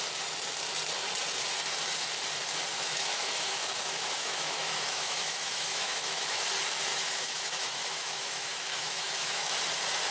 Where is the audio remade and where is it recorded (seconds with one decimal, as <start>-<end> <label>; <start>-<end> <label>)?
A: 0.0-2.7 recorded; 2.7-6.4 remade; 6.4-6.9 recorded; 6.9-9.5 remade; 9.5-10.1 recorded